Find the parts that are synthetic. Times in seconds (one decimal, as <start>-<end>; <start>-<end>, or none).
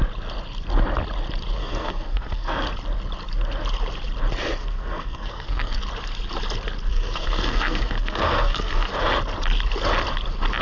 1.6-2.6; 4.6-5.8; 6.9-8.9